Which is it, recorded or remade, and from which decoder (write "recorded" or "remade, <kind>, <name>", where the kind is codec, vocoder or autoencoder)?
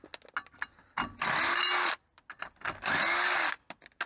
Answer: recorded